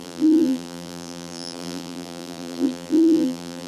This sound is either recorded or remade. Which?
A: remade